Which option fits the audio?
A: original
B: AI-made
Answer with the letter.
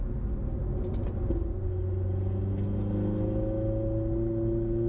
A